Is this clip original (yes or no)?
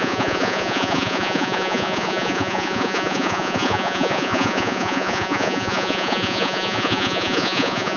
no